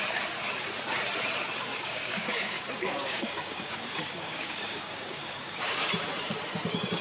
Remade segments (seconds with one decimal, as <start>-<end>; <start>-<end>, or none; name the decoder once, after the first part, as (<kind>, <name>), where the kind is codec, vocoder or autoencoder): 1.7-5.9 (codec, DAC)